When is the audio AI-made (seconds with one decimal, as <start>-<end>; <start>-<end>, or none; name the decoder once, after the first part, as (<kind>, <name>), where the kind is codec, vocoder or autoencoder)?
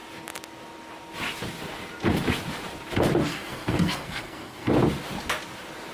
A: 3.3-4.7 (codec, SNAC)